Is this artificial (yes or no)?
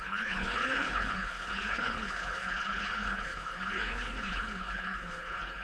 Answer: yes